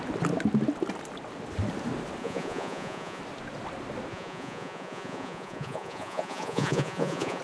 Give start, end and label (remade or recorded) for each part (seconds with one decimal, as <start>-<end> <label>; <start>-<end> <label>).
0.0-2.2 recorded; 2.2-3.2 remade; 3.2-4.1 recorded; 4.1-7.4 remade